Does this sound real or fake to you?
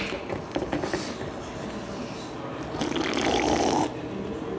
real